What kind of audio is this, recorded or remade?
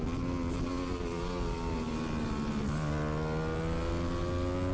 recorded